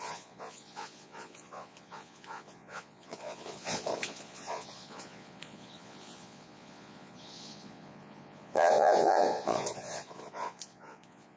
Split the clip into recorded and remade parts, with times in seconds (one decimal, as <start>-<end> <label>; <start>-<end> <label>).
0.0-11.4 remade